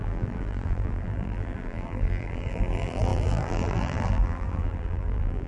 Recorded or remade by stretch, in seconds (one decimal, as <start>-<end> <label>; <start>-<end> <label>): 0.0-5.5 remade